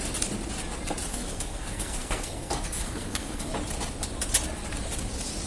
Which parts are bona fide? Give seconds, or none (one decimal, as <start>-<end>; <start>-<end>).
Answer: 0.0-1.1; 3.5-5.5